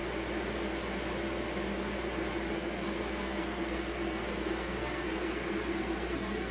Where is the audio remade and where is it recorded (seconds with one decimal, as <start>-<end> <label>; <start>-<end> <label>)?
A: 0.0-2.5 recorded; 2.5-6.5 remade

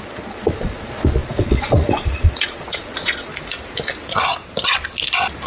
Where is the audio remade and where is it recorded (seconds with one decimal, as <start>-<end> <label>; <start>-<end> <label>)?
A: 0.0-3.3 remade; 3.3-5.5 recorded

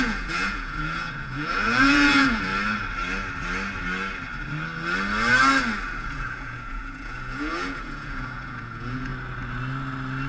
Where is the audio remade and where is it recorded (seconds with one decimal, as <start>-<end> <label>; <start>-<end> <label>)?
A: 0.0-2.5 remade; 2.5-6.0 recorded; 6.0-9.1 remade; 9.1-10.3 recorded

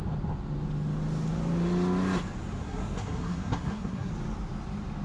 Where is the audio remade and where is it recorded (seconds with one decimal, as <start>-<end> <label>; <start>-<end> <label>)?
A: 0.0-2.6 recorded; 2.6-4.1 remade; 4.1-5.0 recorded